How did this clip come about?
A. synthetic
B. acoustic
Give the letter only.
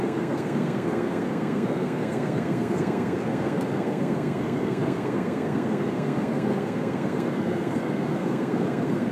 A